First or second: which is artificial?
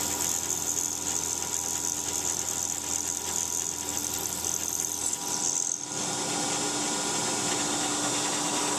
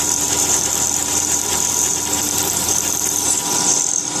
second